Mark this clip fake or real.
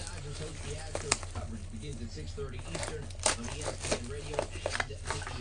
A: real